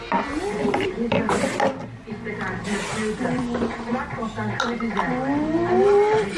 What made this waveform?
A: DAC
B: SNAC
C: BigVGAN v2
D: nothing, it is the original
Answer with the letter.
C